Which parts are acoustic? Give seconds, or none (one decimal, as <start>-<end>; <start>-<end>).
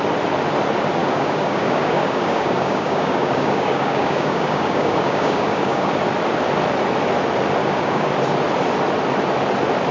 0.0-1.0; 5.9-7.6; 8.1-9.9